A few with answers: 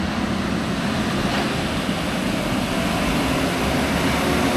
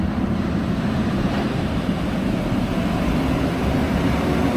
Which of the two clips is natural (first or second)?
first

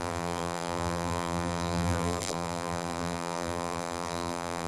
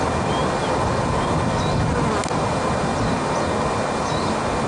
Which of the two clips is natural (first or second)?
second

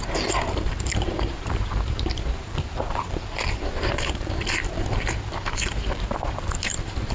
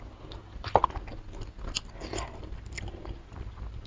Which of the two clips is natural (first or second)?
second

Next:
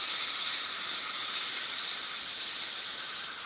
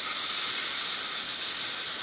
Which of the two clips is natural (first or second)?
second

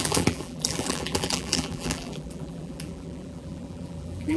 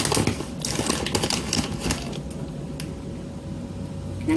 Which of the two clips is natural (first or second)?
second